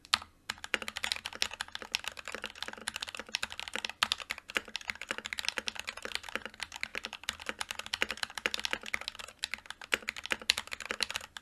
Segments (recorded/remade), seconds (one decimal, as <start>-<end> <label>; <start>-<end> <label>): 0.0-2.8 recorded; 2.8-4.0 remade; 4.0-4.6 recorded; 4.6-5.3 remade; 5.3-11.4 recorded